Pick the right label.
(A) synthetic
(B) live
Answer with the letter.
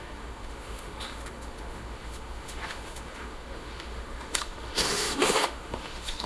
A